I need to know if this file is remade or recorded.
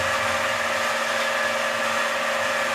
recorded